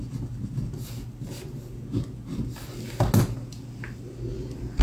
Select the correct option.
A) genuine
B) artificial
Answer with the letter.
A